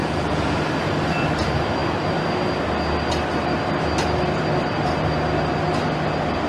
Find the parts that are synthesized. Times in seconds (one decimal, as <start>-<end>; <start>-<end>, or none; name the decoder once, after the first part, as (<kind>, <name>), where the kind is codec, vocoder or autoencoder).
none